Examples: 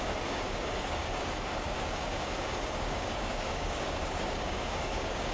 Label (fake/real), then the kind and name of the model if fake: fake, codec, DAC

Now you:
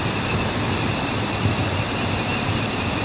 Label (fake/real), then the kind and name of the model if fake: real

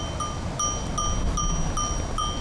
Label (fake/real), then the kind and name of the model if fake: real